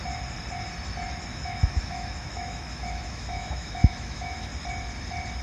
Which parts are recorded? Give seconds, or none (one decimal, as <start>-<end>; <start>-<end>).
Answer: 0.0-1.3; 4.5-5.4